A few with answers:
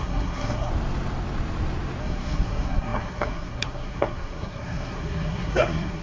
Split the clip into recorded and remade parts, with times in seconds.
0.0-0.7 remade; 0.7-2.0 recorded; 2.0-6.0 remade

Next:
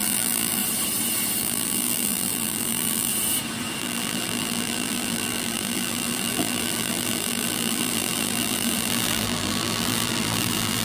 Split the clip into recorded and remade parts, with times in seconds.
0.0-0.6 remade; 0.6-1.4 recorded; 1.4-3.1 remade; 3.1-3.8 recorded; 3.8-10.8 remade